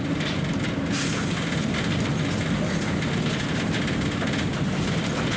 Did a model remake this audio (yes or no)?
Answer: no